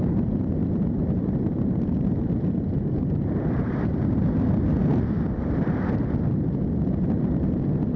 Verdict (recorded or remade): remade